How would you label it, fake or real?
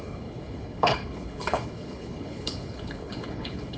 fake